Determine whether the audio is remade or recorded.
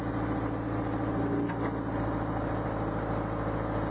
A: recorded